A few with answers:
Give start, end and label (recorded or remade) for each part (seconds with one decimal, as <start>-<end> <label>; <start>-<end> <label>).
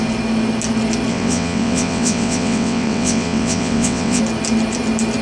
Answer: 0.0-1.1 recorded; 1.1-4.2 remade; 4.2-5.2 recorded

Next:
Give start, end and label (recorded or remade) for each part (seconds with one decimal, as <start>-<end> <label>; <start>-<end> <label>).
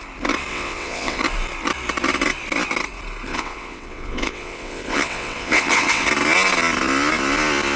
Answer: 0.0-0.5 recorded; 0.5-1.2 remade; 1.2-3.3 recorded; 3.3-6.1 remade; 6.1-7.8 recorded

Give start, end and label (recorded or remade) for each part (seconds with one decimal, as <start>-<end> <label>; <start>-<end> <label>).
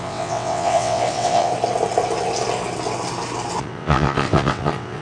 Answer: 0.0-1.5 remade; 1.5-3.6 recorded; 3.6-5.0 remade